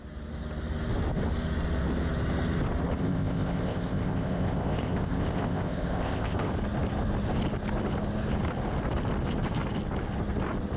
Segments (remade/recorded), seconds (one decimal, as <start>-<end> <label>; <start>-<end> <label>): 0.0-3.0 recorded; 3.0-6.5 remade; 6.5-10.8 recorded